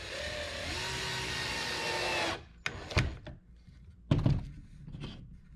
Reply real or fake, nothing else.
real